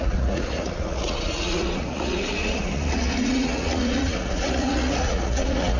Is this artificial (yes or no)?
yes